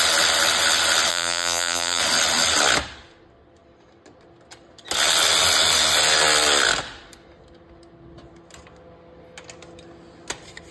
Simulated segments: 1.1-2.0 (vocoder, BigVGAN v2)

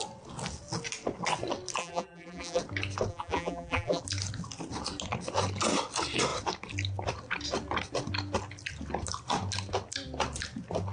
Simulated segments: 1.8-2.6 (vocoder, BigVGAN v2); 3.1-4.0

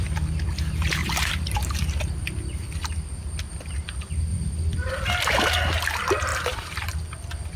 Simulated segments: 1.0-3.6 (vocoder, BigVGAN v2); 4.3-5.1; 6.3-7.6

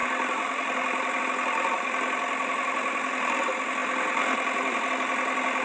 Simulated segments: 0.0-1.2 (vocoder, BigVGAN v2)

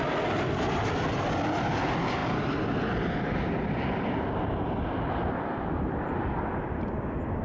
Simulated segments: none